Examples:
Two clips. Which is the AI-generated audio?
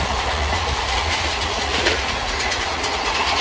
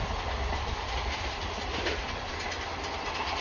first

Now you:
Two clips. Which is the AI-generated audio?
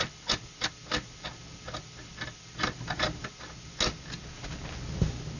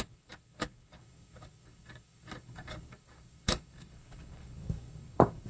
second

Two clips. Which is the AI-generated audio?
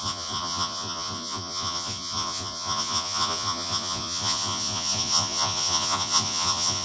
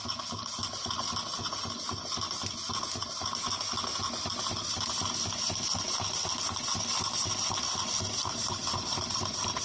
first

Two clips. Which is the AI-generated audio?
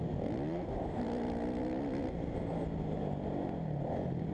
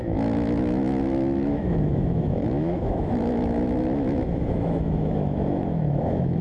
second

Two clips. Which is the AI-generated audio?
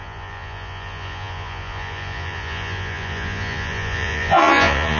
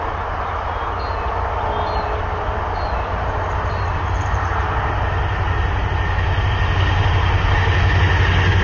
first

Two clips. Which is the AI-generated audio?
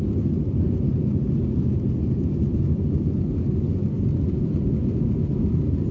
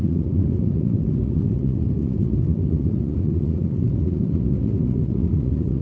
second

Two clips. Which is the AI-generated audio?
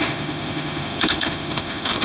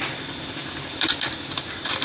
first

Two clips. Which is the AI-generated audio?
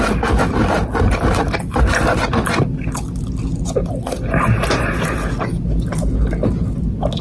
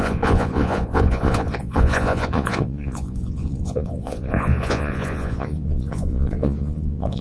second